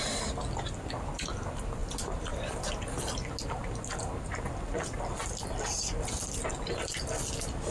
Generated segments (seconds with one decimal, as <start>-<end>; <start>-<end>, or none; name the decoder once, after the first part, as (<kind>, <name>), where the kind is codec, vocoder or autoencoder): 1.8-3.0 (vocoder, BigVGAN v2)